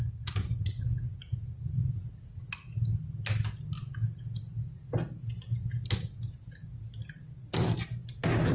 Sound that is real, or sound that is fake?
real